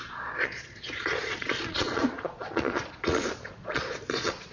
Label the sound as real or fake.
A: fake